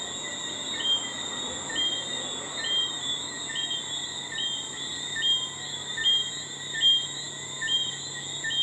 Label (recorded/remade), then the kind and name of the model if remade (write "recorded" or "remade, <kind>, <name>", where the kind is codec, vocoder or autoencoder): recorded